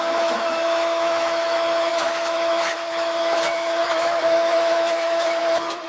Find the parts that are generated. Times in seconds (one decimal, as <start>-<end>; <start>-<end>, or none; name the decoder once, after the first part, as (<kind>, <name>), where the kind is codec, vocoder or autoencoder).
0.0-5.9 (autoencoder, DAC-VAE)